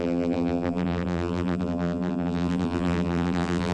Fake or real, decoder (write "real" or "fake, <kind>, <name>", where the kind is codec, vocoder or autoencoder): fake, vocoder, BigVGAN v2